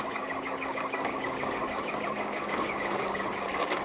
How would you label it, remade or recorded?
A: remade